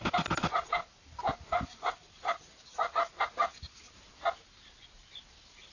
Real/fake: real